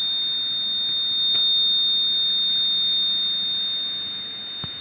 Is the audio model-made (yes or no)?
no